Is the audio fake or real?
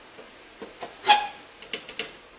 real